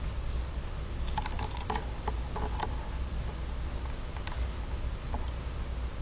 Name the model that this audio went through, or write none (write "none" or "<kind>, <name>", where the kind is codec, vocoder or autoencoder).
none